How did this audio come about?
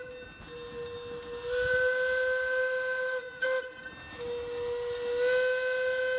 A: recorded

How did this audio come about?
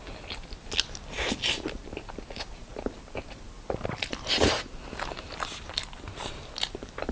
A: recorded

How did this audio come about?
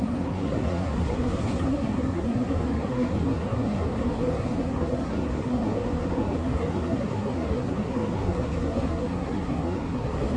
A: remade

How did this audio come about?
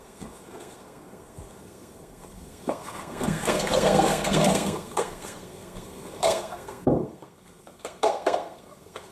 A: remade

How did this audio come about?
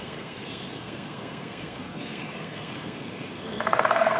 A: remade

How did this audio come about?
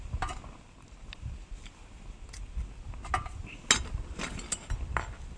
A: recorded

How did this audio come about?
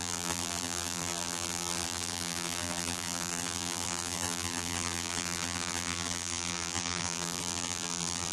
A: remade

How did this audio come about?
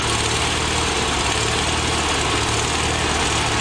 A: recorded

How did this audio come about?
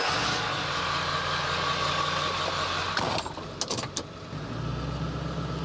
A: recorded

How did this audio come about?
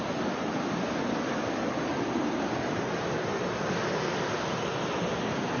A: recorded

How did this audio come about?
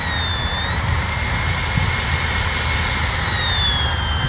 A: recorded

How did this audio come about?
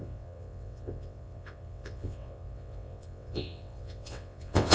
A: remade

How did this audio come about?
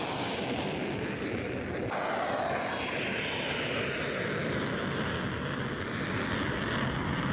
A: recorded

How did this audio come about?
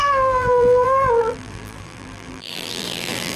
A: remade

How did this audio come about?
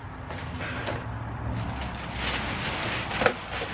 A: recorded